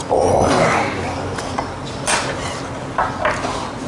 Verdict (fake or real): real